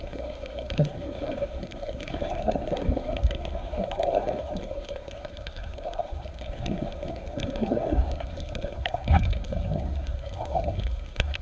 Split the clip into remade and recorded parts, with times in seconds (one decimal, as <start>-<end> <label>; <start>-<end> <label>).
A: 0.0-11.4 remade